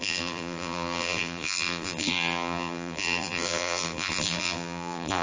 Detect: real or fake fake